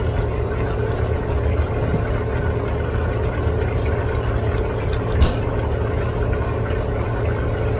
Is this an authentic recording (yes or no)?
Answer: yes